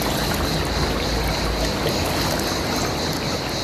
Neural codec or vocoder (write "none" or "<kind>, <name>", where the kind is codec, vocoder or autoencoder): none